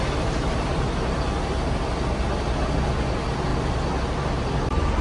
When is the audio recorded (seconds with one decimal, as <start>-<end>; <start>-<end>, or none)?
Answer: 0.0-5.0